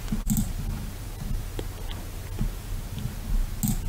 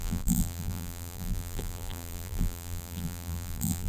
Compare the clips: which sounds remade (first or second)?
second